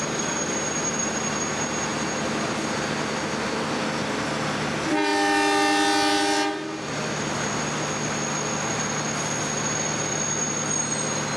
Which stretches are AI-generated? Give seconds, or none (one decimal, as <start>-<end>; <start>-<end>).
none